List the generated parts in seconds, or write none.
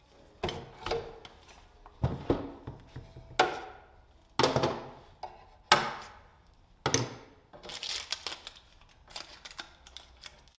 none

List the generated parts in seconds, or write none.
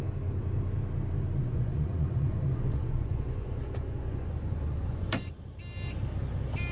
1.4-5.4 (vocoder, Vocos)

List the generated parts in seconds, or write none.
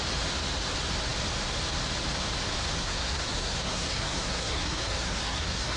2.8-5.8 (codec, SNAC)